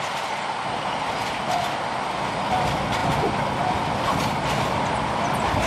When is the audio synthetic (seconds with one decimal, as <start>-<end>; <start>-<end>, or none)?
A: none